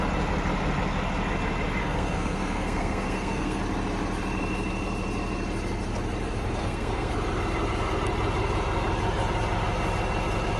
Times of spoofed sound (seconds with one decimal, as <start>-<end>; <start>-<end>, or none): 1.8-3.6; 6.6-7.1